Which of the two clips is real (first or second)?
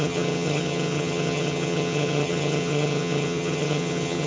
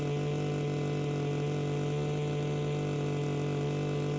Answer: second